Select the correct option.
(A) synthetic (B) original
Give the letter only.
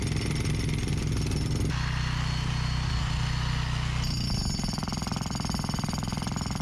B